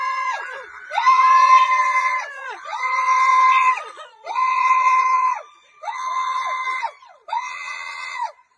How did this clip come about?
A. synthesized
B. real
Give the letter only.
A